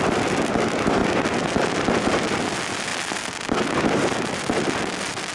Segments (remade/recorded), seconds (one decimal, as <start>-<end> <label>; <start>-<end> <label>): 0.0-1.0 remade; 1.0-1.7 recorded; 1.7-2.9 remade; 2.9-4.3 recorded; 4.3-5.3 remade